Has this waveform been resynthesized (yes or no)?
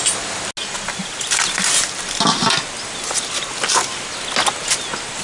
no